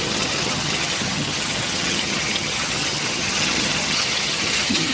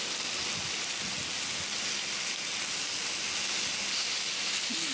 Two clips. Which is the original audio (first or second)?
second